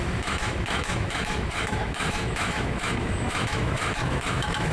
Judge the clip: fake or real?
fake